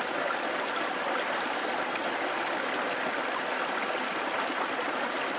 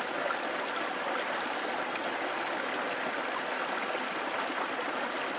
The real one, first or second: second